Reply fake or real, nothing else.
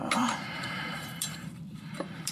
fake